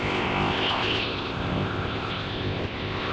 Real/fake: fake